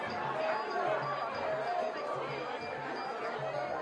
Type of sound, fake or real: real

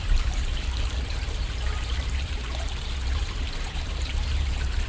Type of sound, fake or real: fake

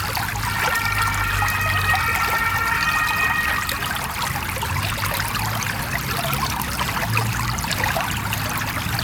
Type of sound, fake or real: real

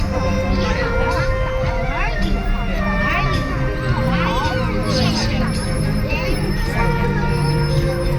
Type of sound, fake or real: real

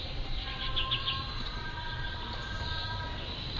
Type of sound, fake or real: fake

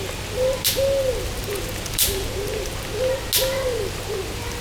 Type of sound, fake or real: real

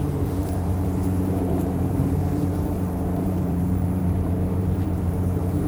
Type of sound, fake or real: fake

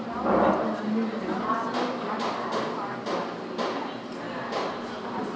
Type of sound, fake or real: real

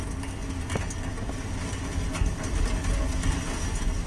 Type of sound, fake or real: real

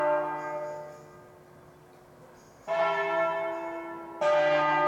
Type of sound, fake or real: real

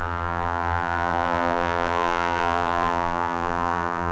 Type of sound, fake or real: fake